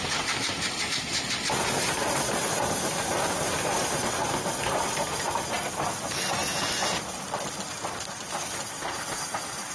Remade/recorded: recorded